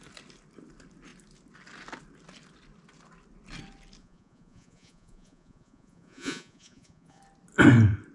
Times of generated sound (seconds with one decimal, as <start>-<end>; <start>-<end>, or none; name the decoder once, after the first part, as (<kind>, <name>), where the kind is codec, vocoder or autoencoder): 4.0-7.2 (vocoder, Vocos)